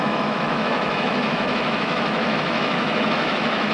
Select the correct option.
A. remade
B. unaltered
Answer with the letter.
A